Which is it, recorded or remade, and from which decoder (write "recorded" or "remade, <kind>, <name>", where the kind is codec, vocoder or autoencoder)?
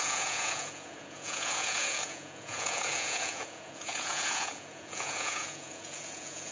remade, vocoder, Vocos